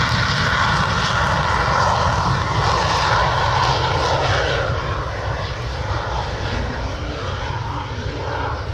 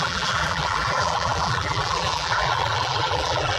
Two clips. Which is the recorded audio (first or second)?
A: first